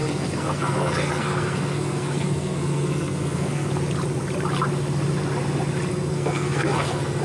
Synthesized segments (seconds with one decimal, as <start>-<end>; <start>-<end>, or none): 0.0-3.7; 6.1-7.2